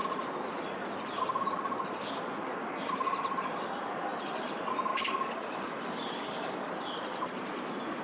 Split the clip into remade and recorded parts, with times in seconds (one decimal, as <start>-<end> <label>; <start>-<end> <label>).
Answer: 0.0-4.9 recorded; 4.9-6.7 remade; 6.7-8.0 recorded